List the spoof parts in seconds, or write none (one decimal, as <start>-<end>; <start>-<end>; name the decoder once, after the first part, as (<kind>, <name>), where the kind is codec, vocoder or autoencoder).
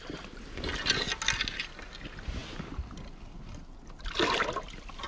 none